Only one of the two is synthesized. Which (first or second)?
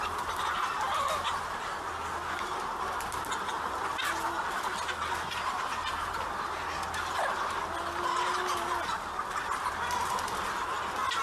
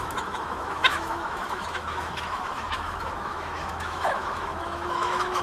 second